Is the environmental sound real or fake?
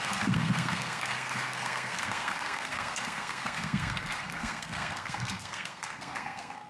fake